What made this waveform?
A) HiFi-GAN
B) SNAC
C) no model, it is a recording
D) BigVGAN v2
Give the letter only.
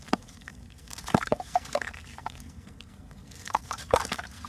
B